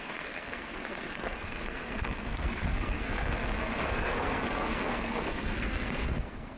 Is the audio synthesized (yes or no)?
yes